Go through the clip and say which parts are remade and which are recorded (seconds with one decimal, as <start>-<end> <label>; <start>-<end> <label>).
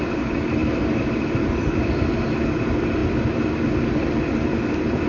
0.0-5.1 recorded